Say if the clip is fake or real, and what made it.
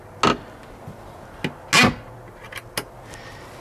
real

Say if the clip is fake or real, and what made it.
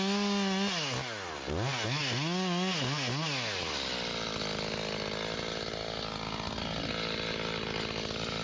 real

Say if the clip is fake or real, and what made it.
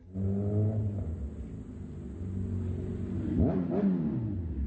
real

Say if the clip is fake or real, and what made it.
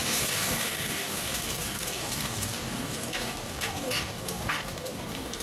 fake, codec, DAC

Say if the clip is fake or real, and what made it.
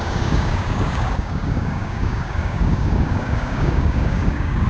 fake, codec, DAC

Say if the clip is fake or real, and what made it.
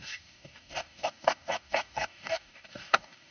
fake, codec, DAC